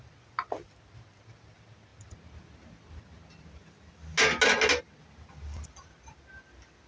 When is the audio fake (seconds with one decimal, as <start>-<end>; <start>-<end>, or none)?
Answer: none